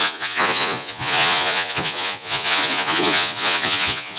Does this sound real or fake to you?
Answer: fake